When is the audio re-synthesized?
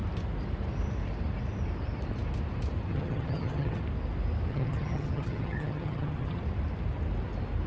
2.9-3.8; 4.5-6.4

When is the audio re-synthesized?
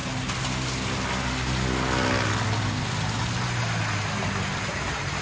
none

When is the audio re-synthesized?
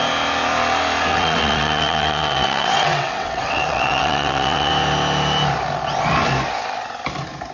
1.1-4.7